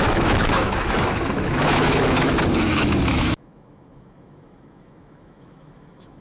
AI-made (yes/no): yes